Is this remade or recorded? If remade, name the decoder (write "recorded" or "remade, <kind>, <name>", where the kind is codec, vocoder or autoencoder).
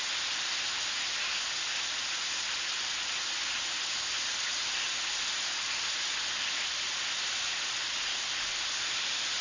recorded